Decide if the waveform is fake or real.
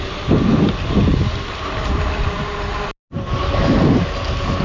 real